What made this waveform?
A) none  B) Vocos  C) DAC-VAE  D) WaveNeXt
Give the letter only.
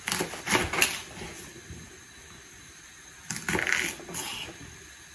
A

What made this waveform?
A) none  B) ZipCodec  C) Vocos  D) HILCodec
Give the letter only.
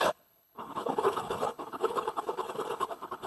D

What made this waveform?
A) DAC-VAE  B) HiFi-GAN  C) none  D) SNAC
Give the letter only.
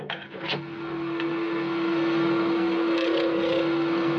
D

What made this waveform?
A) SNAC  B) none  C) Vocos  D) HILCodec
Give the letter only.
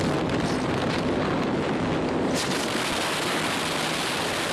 B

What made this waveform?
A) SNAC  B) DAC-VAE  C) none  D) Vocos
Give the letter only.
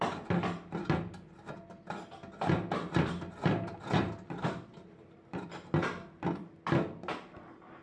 C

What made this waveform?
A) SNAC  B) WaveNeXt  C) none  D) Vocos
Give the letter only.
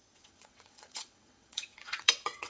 B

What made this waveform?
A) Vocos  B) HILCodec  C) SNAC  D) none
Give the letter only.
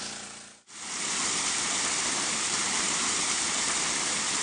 D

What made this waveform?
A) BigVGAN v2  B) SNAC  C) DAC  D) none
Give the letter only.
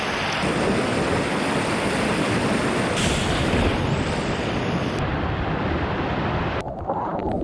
D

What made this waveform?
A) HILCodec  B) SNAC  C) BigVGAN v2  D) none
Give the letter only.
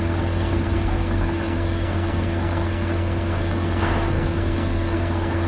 B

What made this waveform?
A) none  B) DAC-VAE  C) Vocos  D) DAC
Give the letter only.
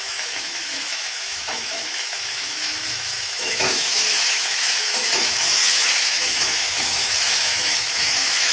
B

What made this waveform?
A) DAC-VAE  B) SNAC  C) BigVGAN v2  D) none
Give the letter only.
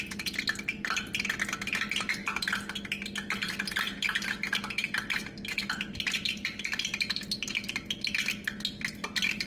D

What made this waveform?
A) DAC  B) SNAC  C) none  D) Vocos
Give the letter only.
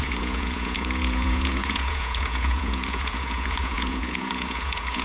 D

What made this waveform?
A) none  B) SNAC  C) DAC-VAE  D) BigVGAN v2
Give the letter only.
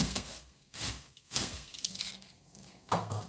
B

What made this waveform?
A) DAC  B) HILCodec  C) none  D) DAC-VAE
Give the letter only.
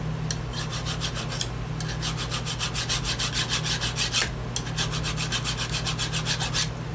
C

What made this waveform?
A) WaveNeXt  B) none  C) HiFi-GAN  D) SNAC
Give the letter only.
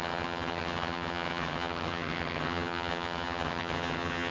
C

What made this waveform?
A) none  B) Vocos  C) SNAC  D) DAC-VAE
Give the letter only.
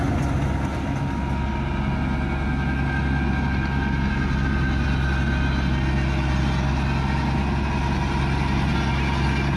A